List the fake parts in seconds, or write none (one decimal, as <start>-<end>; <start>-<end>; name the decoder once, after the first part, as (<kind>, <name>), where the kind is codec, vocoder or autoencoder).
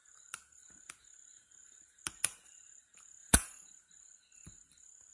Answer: 3.2-3.7 (vocoder, Vocos)